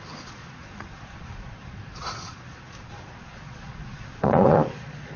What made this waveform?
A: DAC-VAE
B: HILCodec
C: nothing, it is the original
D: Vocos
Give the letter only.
D